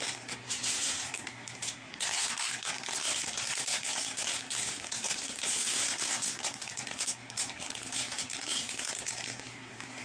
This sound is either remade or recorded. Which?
remade